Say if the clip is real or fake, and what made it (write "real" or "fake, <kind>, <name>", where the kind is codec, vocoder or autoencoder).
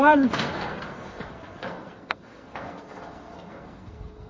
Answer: fake, codec, SNAC